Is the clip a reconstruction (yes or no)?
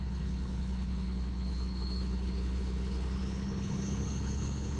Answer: yes